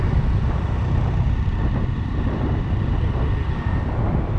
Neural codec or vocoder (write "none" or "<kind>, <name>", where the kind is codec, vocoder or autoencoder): none